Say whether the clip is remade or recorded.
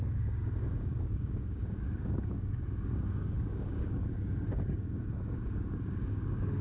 remade